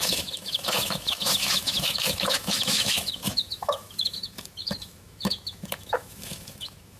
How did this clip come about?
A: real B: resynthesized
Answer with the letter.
B